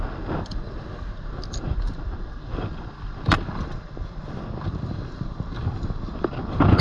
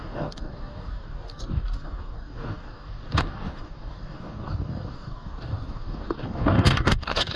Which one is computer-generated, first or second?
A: second